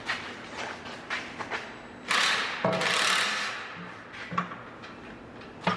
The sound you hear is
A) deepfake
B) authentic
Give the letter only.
B